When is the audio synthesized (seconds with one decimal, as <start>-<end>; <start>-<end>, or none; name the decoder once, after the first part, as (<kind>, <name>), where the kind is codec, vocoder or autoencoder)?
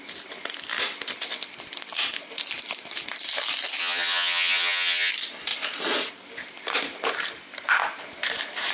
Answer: 3.8-5.1 (vocoder, HiFi-GAN)